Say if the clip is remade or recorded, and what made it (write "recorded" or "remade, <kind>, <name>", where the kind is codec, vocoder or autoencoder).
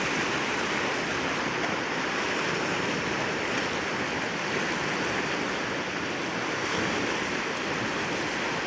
recorded